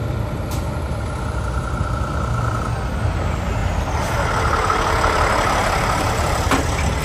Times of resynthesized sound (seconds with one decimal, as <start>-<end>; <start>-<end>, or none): 0.0-1.0; 3.6-6.6